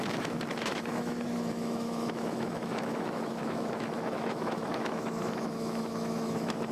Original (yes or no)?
no